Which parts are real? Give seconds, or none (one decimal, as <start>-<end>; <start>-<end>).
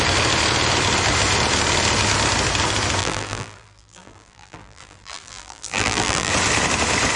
0.0-3.0; 6.3-7.2